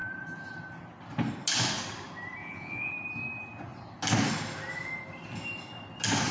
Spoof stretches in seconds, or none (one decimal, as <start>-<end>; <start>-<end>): 2.4-2.9